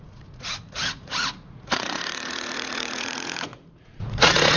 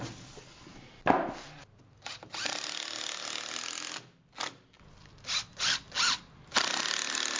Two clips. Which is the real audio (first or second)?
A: second